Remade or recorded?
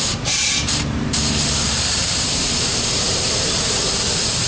remade